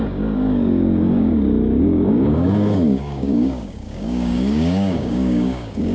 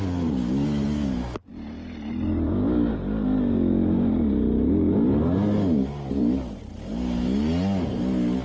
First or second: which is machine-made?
first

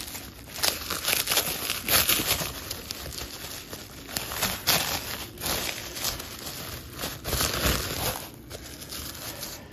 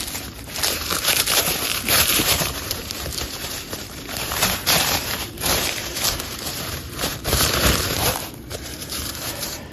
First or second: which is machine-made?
second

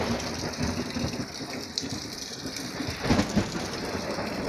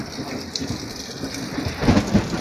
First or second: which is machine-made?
first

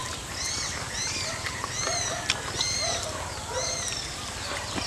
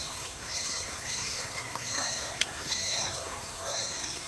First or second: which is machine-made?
second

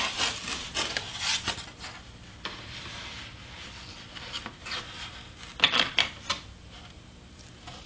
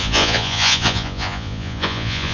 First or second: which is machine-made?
second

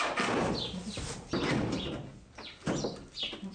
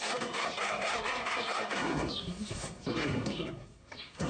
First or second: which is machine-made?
second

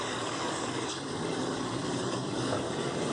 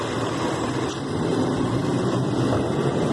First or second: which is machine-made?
first